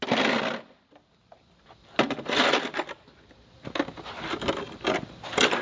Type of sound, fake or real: real